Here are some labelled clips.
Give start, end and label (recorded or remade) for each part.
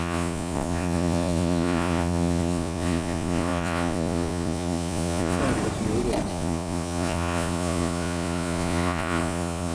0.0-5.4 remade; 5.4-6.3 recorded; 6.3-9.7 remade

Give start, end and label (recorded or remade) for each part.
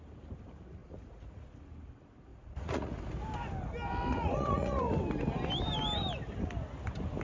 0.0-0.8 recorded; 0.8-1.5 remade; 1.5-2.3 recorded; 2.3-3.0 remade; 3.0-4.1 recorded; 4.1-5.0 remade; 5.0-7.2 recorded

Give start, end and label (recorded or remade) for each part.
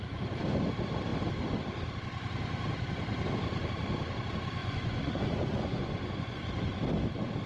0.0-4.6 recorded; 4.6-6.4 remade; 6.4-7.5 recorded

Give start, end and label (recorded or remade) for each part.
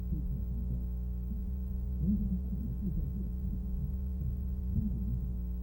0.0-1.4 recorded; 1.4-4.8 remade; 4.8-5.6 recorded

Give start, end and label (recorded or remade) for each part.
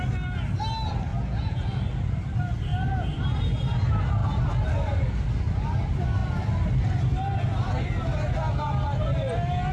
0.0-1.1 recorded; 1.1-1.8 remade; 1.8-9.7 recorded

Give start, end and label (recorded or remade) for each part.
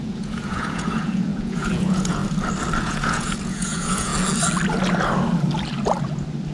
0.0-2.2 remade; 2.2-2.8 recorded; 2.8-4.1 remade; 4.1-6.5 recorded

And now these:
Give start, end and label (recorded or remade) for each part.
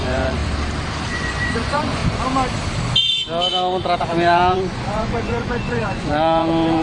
0.0-0.4 remade; 0.4-1.1 recorded; 1.1-2.0 remade; 2.0-4.0 recorded; 4.0-6.8 remade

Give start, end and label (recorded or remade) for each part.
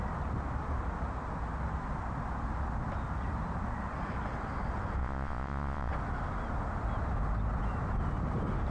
0.0-5.0 recorded; 5.0-5.9 remade; 5.9-8.7 recorded